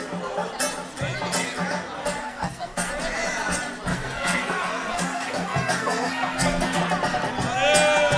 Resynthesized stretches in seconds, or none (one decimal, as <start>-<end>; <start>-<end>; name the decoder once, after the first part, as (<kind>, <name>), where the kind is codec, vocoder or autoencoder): 2.2-2.9 (codec, SNAC); 3.9-6.8